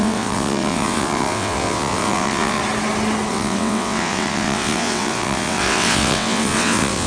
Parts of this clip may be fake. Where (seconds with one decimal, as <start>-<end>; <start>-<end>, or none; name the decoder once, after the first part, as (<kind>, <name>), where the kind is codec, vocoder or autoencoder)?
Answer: 0.0-2.6 (vocoder, WaveNeXt); 3.3-7.1